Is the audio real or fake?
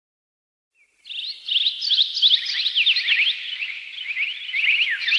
real